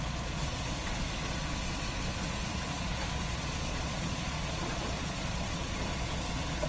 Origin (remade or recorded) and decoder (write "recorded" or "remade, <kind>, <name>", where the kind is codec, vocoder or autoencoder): remade, vocoder, Vocos